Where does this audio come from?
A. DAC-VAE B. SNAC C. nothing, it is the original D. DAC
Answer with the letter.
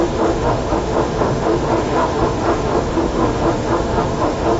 A